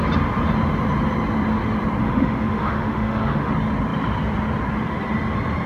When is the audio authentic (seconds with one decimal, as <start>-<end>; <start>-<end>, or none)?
0.0-2.0; 3.5-5.7